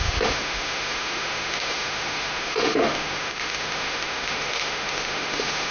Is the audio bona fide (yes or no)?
no